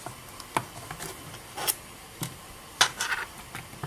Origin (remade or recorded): recorded